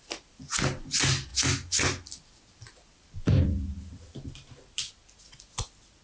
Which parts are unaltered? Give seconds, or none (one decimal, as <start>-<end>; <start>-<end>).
0.0-6.0